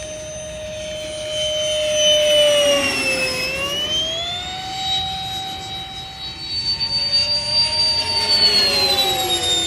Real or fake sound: real